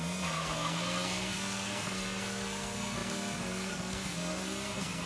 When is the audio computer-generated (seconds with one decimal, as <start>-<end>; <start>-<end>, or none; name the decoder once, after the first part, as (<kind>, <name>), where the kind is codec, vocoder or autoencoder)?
0.0-5.1 (codec, SNAC)